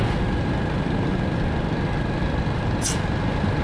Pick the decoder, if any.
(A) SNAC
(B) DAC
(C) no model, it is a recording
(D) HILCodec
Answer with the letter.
C